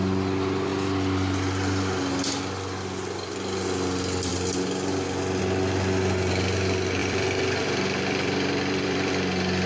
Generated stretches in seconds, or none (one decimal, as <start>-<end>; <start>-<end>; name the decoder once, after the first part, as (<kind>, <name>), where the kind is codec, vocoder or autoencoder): 7.0-9.1 (vocoder, BigVGAN v2)